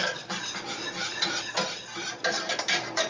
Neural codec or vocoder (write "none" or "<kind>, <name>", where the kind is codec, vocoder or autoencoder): none